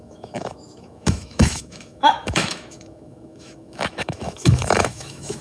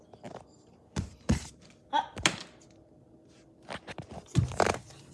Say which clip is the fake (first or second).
first